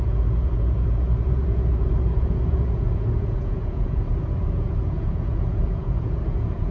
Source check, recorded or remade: remade